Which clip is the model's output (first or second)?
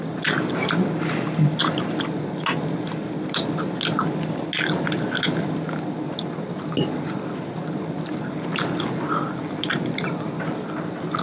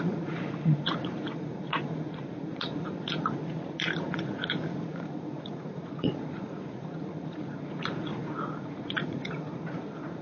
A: second